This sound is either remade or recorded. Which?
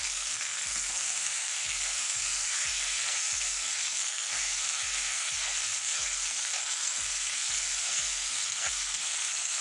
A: remade